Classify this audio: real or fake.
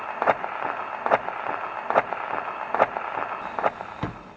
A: real